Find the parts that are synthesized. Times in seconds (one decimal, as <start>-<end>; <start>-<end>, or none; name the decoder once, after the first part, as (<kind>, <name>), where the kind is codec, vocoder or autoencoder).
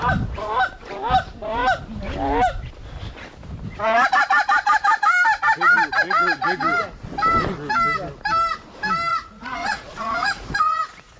9.1-11.2 (vocoder, Vocos)